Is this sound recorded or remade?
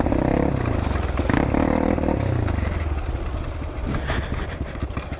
recorded